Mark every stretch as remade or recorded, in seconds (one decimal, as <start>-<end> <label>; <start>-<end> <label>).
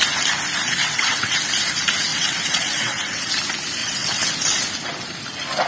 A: 0.0-0.8 recorded; 0.8-1.4 remade; 1.4-2.1 recorded; 2.1-3.3 remade; 3.3-3.8 recorded; 3.8-4.3 remade; 4.3-5.7 recorded